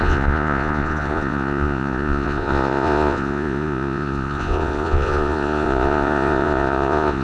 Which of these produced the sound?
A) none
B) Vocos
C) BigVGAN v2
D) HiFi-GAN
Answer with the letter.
B